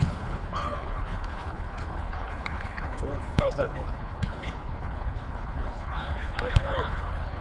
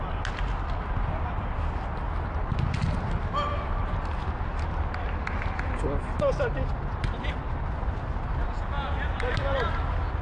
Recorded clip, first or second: second